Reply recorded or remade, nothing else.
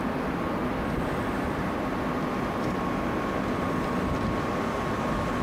recorded